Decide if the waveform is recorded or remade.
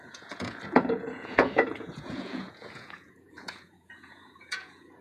remade